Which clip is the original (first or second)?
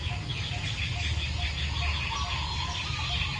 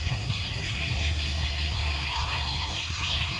first